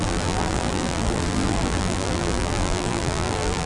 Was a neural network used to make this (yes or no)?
yes